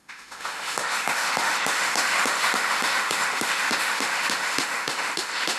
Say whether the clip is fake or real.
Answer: fake